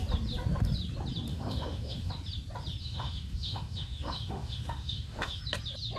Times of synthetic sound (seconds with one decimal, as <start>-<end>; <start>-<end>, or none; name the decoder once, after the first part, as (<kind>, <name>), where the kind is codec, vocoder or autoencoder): 1.3-2.1 (autoencoder, DAC-VAE); 2.8-5.4